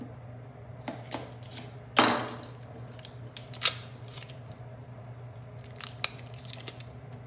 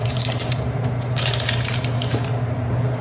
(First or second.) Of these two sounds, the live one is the first